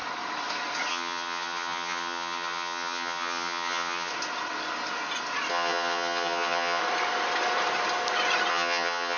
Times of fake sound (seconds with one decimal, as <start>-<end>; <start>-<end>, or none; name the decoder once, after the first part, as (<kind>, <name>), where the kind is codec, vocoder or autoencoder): 0.9-4.1 (vocoder, HiFi-GAN); 5.5-6.8; 8.5-9.2